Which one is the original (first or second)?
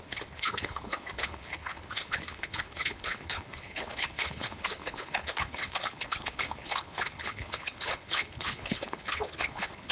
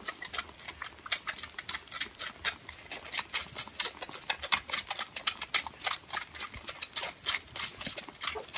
second